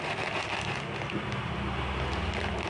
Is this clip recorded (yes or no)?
yes